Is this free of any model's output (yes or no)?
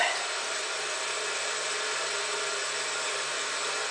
yes